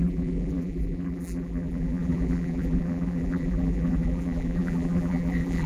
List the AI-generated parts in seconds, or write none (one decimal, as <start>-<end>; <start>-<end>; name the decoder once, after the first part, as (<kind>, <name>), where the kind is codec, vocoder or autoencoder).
0.0-5.7 (vocoder, BigVGAN v2)